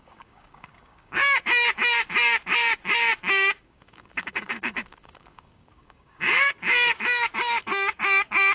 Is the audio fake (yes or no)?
yes